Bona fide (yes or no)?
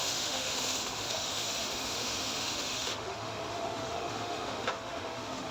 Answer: no